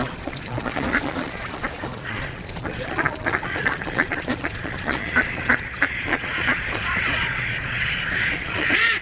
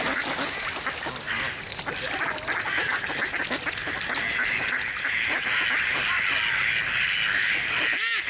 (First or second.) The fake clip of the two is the first